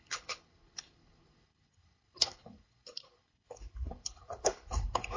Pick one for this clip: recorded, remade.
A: remade